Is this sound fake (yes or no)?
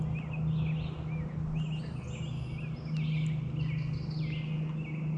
no